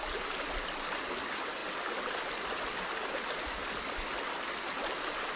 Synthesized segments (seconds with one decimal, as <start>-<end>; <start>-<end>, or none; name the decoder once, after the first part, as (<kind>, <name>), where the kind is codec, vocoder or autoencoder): none